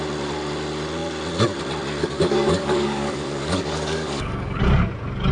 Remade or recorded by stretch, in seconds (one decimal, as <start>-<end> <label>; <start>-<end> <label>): 0.0-2.0 recorded; 2.0-4.6 remade; 4.6-5.3 recorded